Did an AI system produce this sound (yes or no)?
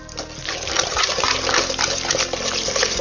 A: no